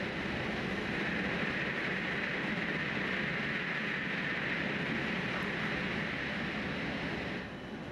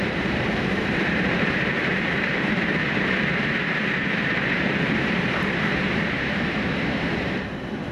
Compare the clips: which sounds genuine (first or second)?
first